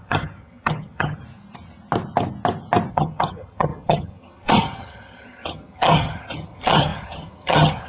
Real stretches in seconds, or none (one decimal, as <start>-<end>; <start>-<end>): 1.2-2.9